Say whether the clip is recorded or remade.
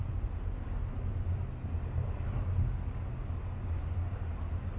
recorded